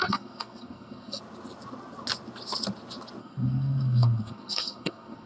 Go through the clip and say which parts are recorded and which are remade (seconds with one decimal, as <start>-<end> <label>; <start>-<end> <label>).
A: 0.0-1.2 remade; 1.2-3.2 recorded; 3.2-5.3 remade